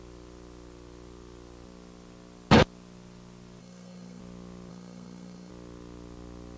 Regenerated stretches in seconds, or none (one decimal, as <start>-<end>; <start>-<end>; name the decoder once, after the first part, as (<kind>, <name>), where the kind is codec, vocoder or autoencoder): 3.6-4.2 (codec, SNAC); 4.7-5.5